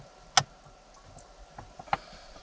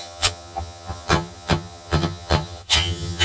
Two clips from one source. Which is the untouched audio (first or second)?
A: first